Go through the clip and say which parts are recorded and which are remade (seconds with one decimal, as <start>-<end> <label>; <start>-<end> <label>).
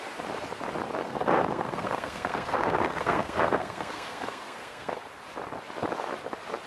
0.0-1.0 recorded; 1.0-5.0 remade; 5.0-6.7 recorded